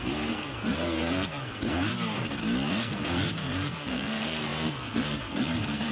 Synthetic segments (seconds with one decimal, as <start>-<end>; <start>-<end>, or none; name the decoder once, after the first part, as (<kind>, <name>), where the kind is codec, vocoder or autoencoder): 0.0-1.9 (codec, SNAC); 2.7-5.9